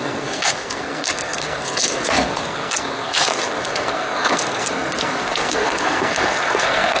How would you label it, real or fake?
fake